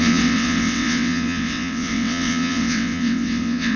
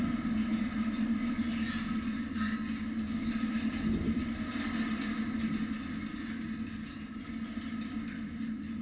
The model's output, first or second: first